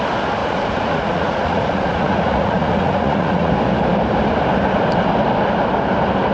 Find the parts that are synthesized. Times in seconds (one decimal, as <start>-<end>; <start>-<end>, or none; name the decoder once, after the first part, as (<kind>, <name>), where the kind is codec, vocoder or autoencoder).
0.4-3.5 (vocoder, Vocos)